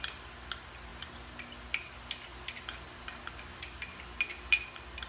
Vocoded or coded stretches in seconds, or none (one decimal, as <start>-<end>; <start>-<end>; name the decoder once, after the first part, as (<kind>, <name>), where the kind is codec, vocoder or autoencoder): none